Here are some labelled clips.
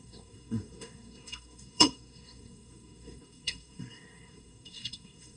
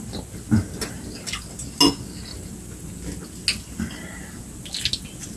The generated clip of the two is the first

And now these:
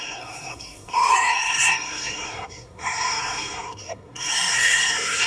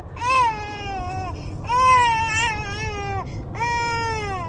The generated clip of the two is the first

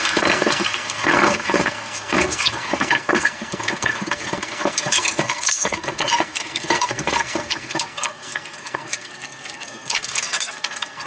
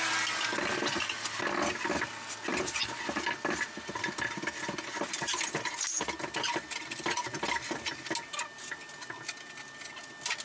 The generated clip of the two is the first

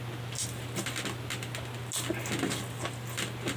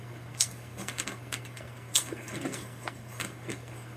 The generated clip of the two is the second